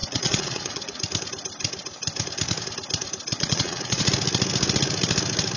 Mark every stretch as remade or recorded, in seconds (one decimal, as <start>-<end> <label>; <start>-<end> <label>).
0.0-1.0 remade; 1.0-3.3 recorded; 3.3-4.1 remade; 4.1-5.6 recorded